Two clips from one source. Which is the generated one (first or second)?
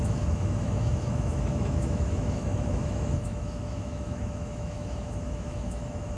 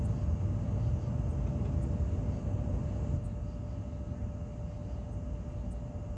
first